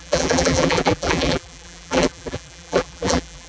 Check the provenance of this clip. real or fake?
fake